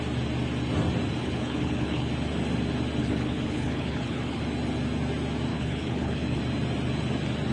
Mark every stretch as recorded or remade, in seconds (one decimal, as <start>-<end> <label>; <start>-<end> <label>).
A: 0.0-1.2 recorded; 1.2-2.1 remade; 2.1-3.0 recorded; 3.0-4.4 remade; 4.4-5.5 recorded; 5.5-6.4 remade; 6.4-7.5 recorded